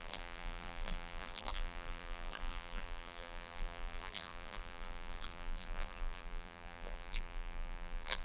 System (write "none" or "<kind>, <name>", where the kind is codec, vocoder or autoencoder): vocoder, BigVGAN v2